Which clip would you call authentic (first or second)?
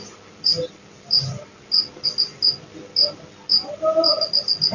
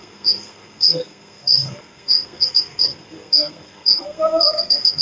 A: first